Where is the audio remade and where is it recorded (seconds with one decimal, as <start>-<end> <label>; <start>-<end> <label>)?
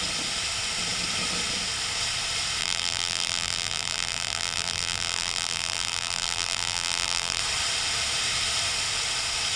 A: 0.0-2.6 recorded; 2.6-7.4 remade; 7.4-9.6 recorded